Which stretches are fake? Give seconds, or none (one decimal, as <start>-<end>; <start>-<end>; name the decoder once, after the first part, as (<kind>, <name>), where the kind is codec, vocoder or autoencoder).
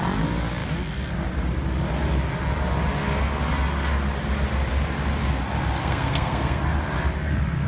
5.8-6.6 (codec, SNAC)